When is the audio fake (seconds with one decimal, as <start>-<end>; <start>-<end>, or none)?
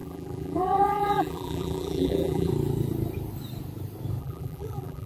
0.0-2.5; 4.2-5.1